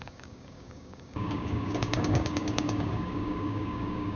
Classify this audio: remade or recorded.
remade